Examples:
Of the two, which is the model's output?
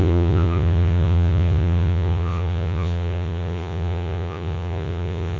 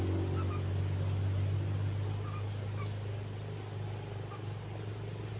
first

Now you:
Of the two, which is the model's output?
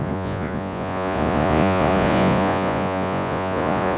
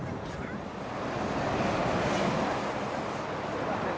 first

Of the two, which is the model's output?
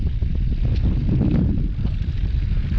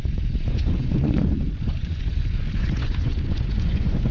second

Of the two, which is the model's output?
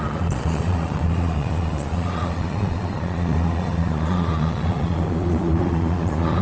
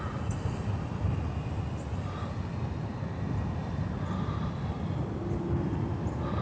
first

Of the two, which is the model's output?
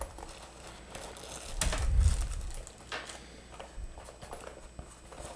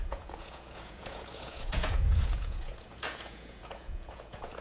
second